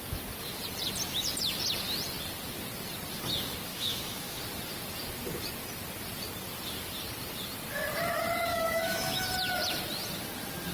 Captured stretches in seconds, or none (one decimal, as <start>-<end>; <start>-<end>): 0.0-3.7; 4.4-8.5; 9.3-10.7